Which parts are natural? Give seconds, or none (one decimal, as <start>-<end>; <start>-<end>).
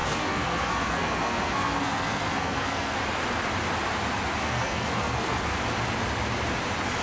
3.0-4.4; 5.6-7.0